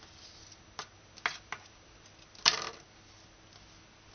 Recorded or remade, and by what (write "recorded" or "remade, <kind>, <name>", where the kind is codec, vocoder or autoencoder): recorded